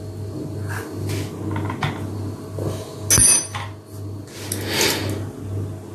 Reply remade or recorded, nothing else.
recorded